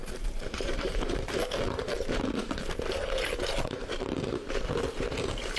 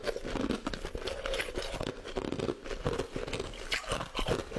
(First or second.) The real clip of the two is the second